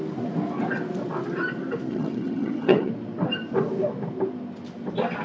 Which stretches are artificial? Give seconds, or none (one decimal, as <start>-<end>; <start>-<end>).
1.9-2.9